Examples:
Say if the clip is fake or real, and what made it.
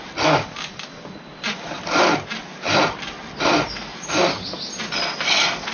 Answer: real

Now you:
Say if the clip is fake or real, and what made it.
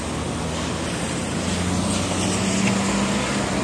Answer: real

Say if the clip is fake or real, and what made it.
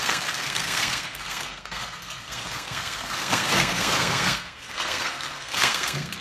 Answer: fake, codec, SNAC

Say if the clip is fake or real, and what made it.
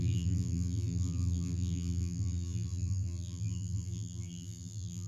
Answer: fake, vocoder, BigVGAN v2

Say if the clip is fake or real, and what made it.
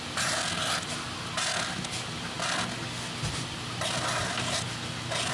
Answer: real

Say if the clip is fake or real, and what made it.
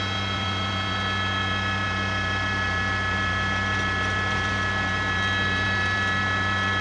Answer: real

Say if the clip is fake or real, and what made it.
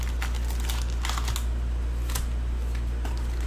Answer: real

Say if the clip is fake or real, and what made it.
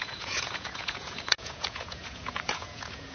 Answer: fake, vocoder, Vocos